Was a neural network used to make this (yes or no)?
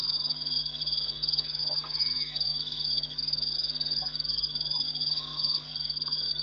yes